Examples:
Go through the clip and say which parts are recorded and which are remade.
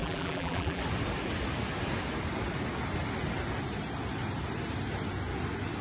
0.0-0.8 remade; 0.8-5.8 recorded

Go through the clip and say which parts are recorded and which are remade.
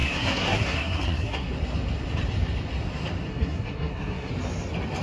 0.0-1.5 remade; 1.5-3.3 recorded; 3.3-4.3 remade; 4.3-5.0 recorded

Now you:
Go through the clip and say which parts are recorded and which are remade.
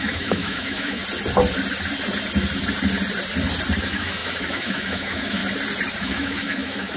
0.0-1.0 remade; 1.0-3.8 recorded; 3.8-5.4 remade; 5.4-6.0 recorded; 6.0-7.0 remade